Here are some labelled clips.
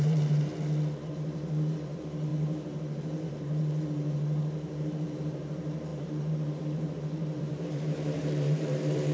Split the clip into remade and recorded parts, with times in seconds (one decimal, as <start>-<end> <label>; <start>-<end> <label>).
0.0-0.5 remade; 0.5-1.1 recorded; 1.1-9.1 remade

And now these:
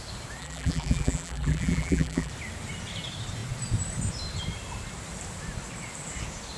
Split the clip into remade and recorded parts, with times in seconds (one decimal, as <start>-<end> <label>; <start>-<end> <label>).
0.0-0.4 recorded; 0.4-2.3 remade; 2.3-6.6 recorded

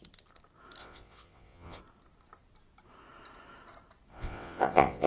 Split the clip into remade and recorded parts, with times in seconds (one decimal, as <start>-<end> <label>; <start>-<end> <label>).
0.0-0.8 recorded; 0.8-1.8 remade; 1.8-4.1 recorded; 4.1-5.1 remade